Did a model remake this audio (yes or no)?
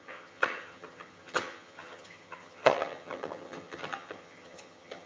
yes